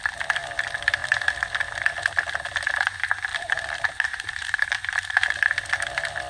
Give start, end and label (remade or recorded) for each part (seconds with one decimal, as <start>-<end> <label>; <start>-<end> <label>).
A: 0.0-3.3 recorded; 3.3-5.4 remade; 5.4-6.3 recorded